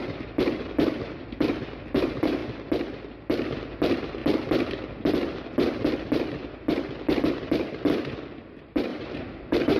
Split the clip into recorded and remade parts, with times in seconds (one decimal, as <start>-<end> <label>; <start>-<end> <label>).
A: 0.0-2.4 remade; 2.4-3.8 recorded; 3.8-4.2 remade; 4.2-7.3 recorded; 7.3-9.8 remade